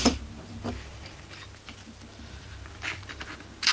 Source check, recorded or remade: recorded